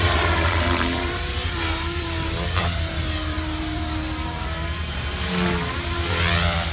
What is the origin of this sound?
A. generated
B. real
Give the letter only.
A